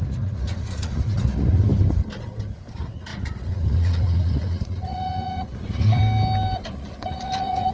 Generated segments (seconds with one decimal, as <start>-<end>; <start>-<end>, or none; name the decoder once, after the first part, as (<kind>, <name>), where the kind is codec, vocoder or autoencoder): 0.0-1.7 (vocoder, Vocos); 2.7-6.0; 6.7-7.7